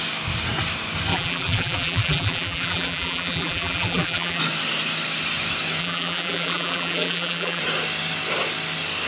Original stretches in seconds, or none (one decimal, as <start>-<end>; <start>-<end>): 0.0-1.1; 4.4-5.8; 7.6-9.1